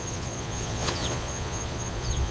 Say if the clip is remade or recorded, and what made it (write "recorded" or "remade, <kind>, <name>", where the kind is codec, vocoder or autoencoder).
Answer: remade, vocoder, Vocos